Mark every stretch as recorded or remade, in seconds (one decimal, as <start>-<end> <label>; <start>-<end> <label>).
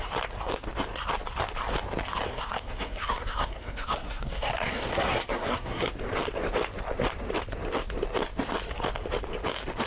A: 0.0-2.3 recorded; 2.3-5.9 remade; 5.9-9.9 recorded